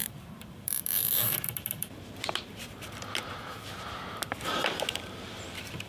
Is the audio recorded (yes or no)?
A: no